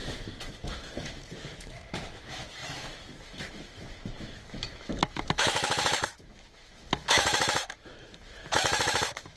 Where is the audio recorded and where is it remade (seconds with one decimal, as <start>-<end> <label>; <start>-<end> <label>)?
0.0-9.4 remade